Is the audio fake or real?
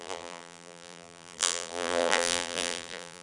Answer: fake